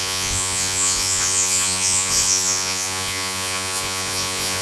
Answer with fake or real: fake